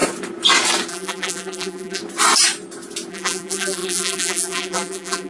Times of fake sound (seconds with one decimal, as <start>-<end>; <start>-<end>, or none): 0.9-2.0; 3.1-5.3

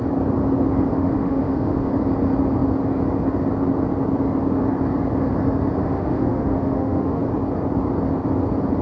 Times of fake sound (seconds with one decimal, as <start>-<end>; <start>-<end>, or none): 0.9-1.9; 5.8-7.2

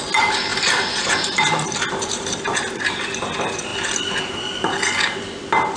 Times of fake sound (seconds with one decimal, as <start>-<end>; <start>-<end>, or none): 0.5-2.4; 3.7-4.3

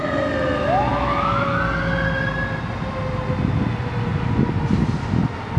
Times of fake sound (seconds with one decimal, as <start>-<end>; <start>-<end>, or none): 0.9-1.6

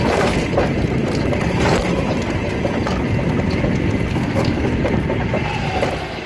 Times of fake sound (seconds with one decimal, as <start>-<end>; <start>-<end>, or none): 4.1-4.7